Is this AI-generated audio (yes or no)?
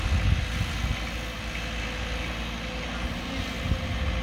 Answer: no